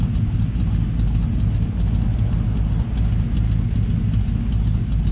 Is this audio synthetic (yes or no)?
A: no